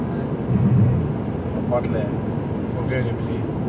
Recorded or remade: recorded